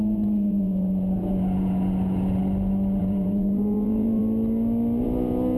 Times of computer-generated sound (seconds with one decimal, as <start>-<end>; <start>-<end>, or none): 0.0-2.4; 3.0-4.2; 5.0-5.6